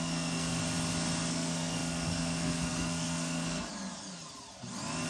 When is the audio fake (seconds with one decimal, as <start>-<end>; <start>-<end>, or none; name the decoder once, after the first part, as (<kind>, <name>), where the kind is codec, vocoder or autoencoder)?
0.0-0.6 (codec, SNAC); 1.3-3.7